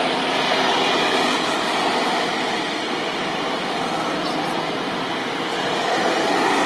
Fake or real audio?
real